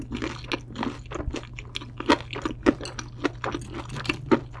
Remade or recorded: recorded